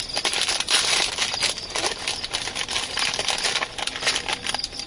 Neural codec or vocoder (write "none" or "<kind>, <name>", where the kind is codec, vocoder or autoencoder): none